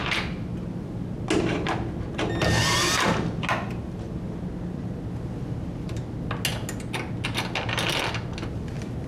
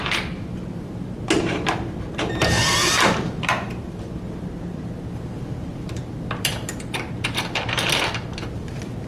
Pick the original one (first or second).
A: first